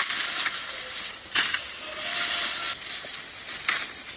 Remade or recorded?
recorded